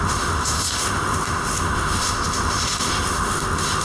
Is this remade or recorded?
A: remade